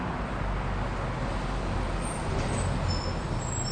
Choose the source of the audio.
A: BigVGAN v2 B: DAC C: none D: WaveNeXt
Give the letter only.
C